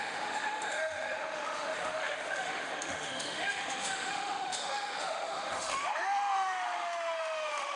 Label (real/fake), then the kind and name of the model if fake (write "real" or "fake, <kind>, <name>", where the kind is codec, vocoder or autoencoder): fake, autoencoder, DAC-VAE